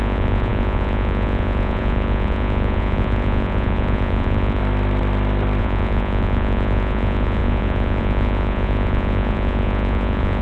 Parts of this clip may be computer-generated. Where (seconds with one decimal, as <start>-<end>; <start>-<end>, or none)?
0.0-4.6; 5.6-10.4